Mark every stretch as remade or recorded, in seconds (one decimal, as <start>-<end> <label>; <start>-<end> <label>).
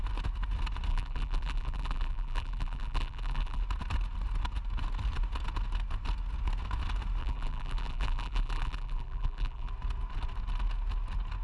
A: 0.0-0.9 recorded; 0.9-3.6 remade; 3.6-7.2 recorded; 7.2-9.7 remade; 9.7-11.4 recorded